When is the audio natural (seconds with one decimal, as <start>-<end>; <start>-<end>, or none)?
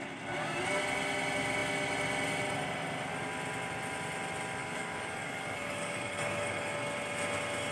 0.0-4.6; 6.9-7.7